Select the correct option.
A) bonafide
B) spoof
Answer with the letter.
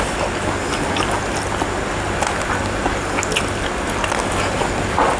A